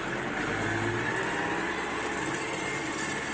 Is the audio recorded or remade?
recorded